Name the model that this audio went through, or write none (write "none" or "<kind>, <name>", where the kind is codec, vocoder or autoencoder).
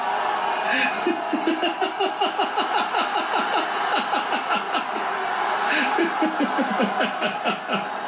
none